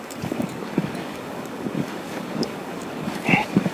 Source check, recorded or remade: remade